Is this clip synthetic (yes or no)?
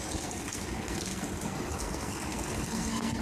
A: yes